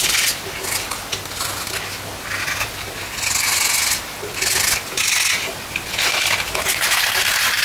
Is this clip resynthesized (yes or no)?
no